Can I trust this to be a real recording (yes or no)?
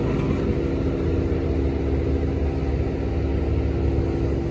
yes